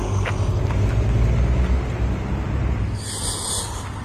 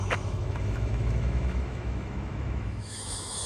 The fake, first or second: second